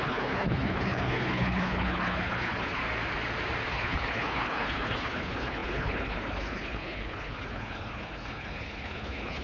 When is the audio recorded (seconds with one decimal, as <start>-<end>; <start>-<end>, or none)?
2.8-3.7